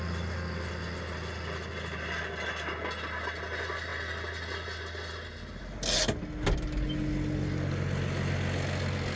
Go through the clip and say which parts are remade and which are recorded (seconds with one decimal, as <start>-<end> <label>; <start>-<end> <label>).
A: 0.0-9.2 recorded